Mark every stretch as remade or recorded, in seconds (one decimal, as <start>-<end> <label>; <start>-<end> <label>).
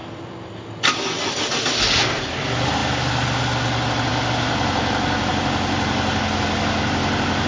0.0-7.5 recorded